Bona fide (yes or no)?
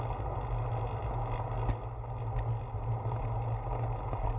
yes